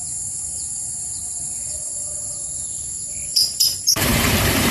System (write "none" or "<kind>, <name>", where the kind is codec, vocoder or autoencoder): vocoder, BigVGAN v2